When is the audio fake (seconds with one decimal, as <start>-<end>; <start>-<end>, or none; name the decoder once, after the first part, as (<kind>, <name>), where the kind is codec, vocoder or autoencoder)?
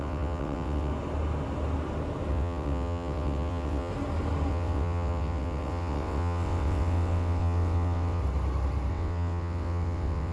0.0-0.9 (vocoder, WaveNeXt); 2.3-3.9; 4.5-8.2; 8.9-10.3